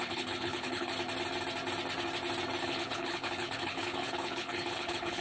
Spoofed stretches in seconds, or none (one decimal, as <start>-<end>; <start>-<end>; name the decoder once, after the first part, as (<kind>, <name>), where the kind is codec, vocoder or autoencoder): 0.0-0.9 (codec, HILCodec); 2.6-5.2

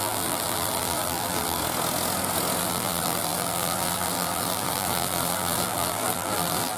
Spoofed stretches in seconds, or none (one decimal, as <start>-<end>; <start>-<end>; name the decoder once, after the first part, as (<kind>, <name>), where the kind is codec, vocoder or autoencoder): 0.0-1.6 (vocoder, BigVGAN v2); 2.6-6.8

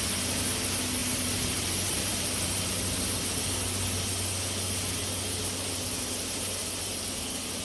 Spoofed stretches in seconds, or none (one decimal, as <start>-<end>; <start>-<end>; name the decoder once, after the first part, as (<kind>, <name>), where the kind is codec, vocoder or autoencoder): 1.0-2.7 (vocoder, BigVGAN v2)

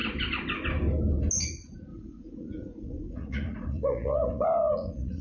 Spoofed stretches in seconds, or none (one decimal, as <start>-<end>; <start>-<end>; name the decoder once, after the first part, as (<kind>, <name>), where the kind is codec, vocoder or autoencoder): 1.9-5.2 (vocoder, Vocos)

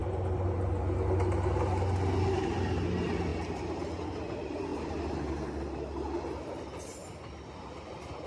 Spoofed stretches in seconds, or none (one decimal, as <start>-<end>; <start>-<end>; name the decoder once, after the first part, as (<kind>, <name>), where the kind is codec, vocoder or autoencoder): 0.0-0.8 (vocoder, BigVGAN v2)